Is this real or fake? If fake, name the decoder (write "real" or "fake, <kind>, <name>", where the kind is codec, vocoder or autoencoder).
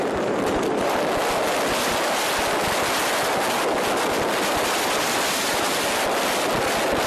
real